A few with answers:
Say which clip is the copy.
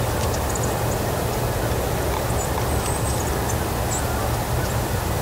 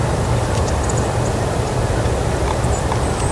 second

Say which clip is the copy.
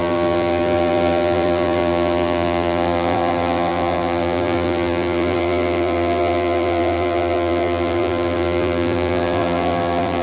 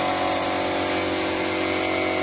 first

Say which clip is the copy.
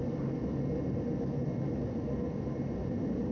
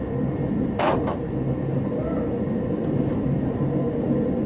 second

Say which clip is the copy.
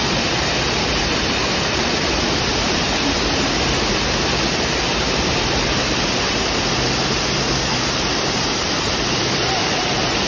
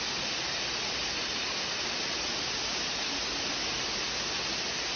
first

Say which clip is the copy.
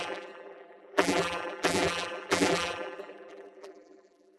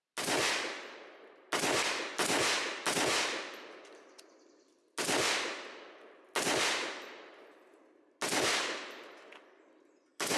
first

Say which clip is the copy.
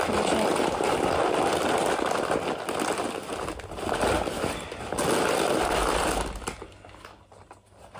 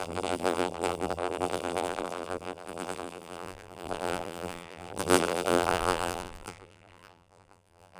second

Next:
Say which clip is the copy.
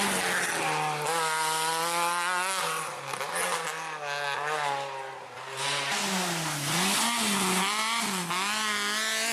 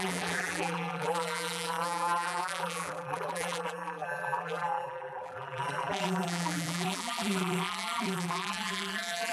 second